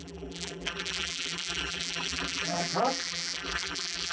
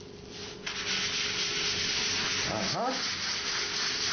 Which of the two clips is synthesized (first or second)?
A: first